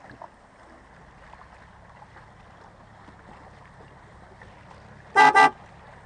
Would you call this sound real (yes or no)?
yes